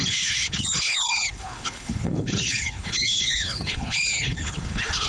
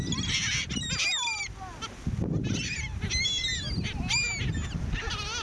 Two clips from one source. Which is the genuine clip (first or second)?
second